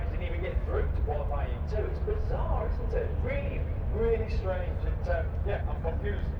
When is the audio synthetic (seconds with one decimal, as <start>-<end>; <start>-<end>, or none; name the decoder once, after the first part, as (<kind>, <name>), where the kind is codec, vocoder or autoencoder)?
0.7-1.4 (vocoder, BigVGAN v2)